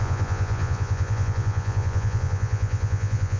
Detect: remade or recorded remade